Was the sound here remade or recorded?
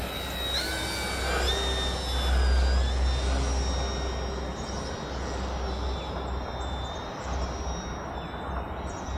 recorded